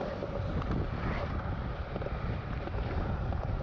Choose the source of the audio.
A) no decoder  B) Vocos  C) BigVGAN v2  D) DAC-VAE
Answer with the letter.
C